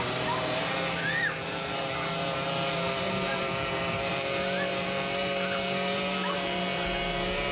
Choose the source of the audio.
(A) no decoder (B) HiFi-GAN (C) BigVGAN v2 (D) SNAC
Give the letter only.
C